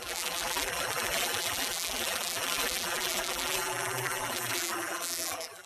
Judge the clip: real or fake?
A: fake